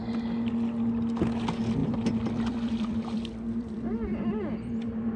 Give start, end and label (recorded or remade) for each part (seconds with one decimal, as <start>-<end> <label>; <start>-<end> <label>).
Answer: 0.0-1.8 recorded; 1.8-5.2 remade